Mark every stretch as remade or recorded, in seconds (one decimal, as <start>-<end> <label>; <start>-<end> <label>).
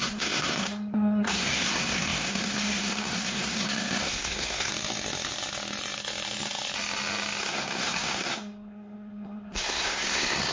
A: 0.0-4.7 remade; 4.7-7.4 recorded; 7.4-10.5 remade